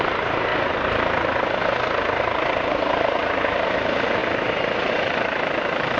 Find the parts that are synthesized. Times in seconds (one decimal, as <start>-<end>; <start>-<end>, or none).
0.0-0.5; 2.1-6.0